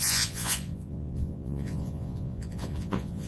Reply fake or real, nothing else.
fake